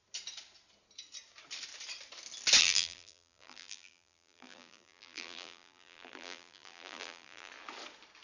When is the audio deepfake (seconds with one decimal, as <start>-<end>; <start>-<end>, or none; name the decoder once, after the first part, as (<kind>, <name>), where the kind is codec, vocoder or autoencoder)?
2.6-7.5 (vocoder, BigVGAN v2)